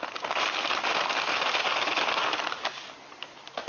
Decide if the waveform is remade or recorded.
recorded